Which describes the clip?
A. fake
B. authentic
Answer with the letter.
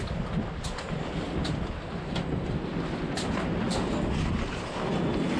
B